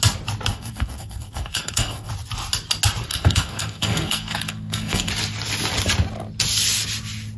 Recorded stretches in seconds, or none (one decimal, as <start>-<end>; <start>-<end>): 0.0-0.5; 2.1-3.1; 5.1-7.4